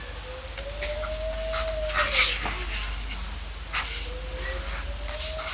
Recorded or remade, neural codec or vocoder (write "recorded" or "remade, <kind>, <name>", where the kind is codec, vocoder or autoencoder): recorded